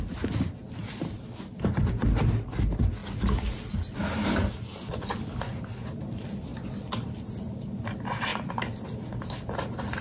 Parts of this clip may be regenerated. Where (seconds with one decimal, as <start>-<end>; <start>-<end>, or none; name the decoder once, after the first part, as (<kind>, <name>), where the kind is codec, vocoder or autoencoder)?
none